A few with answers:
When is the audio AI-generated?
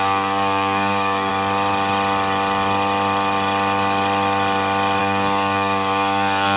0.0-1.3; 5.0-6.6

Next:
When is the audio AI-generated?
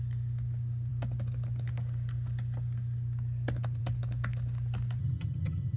5.0-5.8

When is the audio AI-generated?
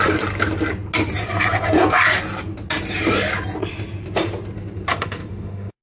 4.9-5.8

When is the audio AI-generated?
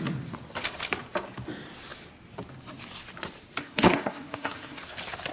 3.6-4.8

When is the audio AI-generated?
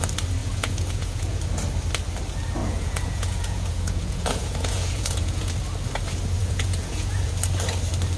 0.4-1.4; 2.6-5.5; 6.4-7.3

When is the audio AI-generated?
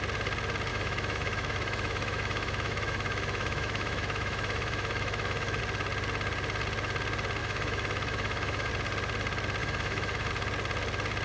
0.7-5.6; 7.4-8.7; 9.6-10.3